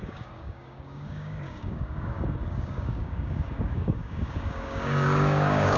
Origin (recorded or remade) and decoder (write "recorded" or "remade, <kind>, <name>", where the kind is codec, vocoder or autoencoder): remade, codec, DAC